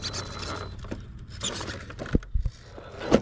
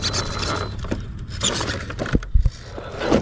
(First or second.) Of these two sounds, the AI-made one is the second